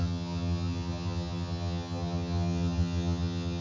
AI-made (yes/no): yes